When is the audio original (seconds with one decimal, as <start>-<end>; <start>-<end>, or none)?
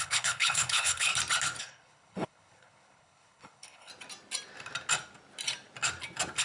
1.1-1.6; 3.9-6.4